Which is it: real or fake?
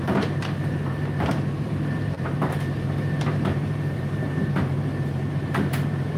fake